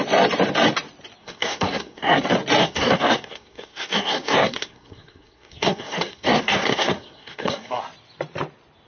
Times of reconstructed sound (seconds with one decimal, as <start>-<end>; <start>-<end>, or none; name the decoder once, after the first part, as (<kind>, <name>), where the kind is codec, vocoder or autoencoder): 1.2-2.2 (codec, SNAC); 2.6-7.8